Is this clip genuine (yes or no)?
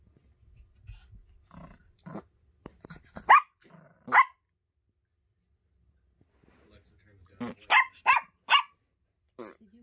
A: yes